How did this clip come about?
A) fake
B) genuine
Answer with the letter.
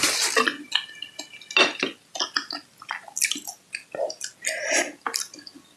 B